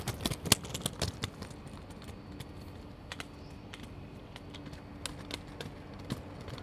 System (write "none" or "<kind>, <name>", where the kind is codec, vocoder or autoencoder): none